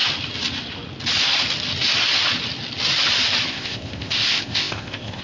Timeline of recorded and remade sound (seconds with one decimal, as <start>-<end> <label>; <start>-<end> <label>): 0.0-3.5 recorded; 3.5-5.2 remade

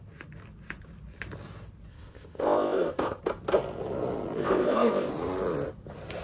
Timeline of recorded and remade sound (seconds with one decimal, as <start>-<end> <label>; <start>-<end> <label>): 0.0-1.9 recorded; 1.9-3.2 remade; 3.2-4.4 recorded; 4.4-5.1 remade; 5.1-6.2 recorded

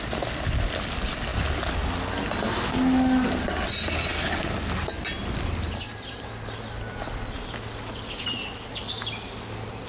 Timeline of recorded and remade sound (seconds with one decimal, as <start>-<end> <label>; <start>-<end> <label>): 0.0-9.9 recorded

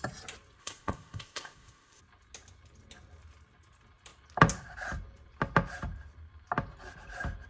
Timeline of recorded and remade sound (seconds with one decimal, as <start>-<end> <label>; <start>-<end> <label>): 0.0-0.6 recorded; 0.6-2.0 remade; 2.0-7.5 recorded